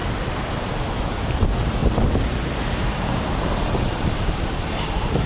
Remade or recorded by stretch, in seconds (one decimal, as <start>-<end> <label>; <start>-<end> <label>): 0.0-0.7 remade; 0.7-1.8 recorded; 1.8-5.3 remade